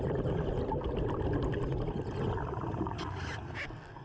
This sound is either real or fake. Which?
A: real